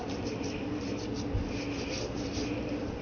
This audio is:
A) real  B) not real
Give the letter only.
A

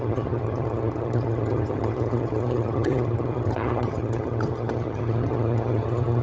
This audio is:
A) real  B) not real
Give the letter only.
B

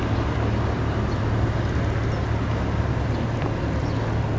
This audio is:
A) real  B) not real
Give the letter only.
A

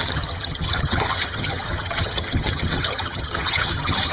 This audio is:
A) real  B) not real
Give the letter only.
B